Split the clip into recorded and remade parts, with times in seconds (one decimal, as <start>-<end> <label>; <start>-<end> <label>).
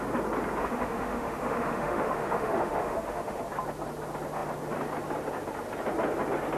0.0-0.6 recorded; 0.6-3.4 remade; 3.4-6.6 recorded